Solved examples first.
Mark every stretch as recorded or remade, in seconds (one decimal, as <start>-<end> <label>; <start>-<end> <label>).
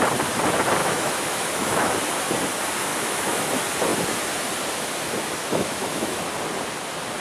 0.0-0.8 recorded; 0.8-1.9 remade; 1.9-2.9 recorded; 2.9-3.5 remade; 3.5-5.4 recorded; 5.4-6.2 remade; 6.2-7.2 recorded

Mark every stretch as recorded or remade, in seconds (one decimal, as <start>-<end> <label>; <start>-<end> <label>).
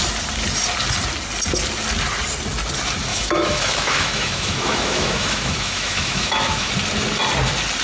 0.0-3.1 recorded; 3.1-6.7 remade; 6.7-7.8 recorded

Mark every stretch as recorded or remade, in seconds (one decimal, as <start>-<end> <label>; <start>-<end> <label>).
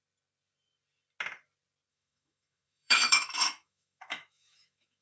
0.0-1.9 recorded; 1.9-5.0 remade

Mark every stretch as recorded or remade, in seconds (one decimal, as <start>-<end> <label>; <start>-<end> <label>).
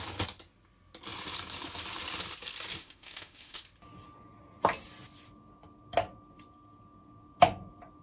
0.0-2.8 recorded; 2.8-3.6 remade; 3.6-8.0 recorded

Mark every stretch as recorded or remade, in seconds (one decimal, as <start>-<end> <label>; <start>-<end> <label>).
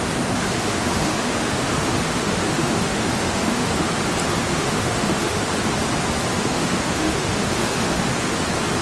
0.0-0.7 recorded; 0.7-3.9 remade; 3.9-4.5 recorded; 4.5-5.5 remade; 5.5-6.3 recorded; 6.3-8.0 remade; 8.0-8.8 recorded